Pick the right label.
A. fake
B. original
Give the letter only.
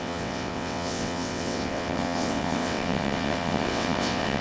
A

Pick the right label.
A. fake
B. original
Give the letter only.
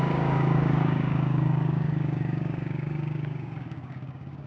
A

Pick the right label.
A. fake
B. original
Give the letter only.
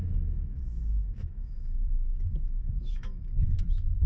A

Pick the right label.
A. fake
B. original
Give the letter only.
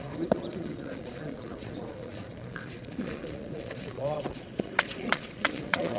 A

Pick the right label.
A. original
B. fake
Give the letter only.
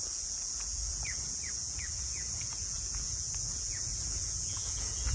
B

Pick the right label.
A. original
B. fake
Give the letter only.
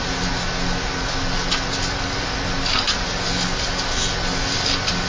A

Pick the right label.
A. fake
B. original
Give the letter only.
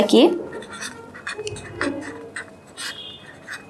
B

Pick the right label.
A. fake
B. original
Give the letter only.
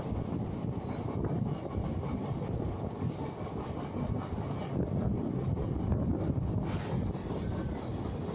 B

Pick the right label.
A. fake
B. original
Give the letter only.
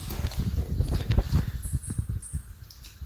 B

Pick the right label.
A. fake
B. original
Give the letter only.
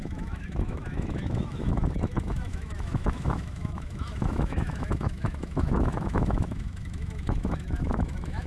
A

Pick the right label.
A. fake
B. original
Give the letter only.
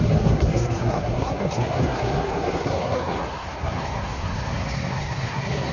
A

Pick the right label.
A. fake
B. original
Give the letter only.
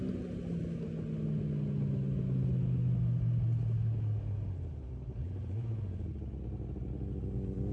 B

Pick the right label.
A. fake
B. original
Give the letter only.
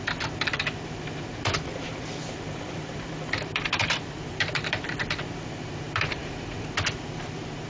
A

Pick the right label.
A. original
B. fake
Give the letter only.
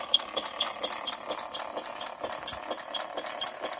A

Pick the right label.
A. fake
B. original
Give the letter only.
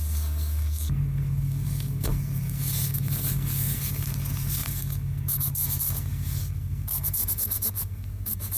A